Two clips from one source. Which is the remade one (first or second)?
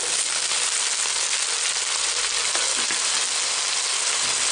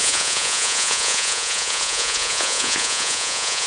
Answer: second